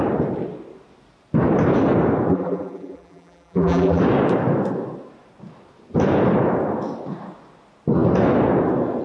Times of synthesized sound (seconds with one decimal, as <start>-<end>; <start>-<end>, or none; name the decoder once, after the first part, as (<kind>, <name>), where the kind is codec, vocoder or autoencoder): 2.3-4.0 (vocoder, BigVGAN v2)